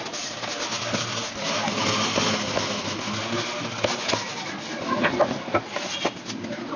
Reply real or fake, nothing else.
real